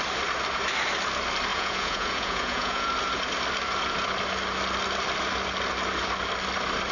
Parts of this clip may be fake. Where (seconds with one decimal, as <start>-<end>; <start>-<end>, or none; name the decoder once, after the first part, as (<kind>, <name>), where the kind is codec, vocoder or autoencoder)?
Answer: 1.5-2.9 (vocoder, Vocos)